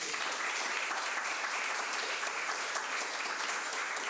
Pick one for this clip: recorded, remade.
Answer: remade